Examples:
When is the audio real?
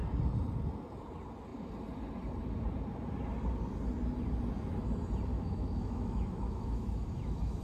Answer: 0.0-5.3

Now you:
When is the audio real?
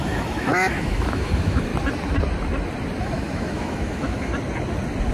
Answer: 1.7-3.0; 4.3-5.1